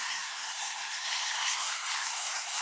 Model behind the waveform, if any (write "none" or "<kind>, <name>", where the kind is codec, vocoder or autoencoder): codec, SNAC